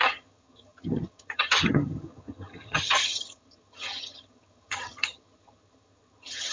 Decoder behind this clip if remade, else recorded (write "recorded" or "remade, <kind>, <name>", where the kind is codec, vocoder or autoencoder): remade, vocoder, HiFi-GAN